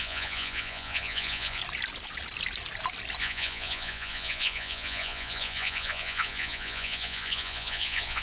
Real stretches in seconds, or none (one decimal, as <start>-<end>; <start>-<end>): 1.6-3.2